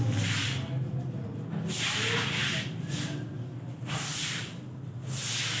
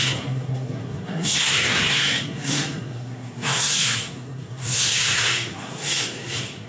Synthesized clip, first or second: second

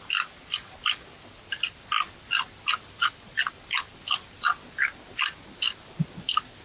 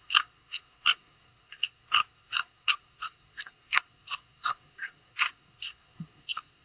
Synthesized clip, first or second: second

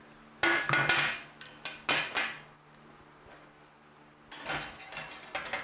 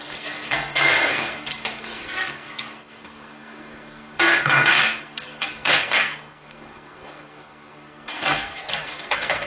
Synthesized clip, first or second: second